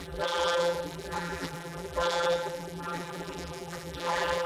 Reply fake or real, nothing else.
fake